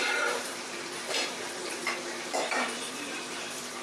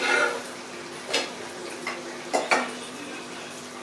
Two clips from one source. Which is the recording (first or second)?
second